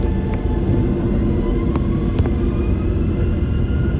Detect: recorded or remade recorded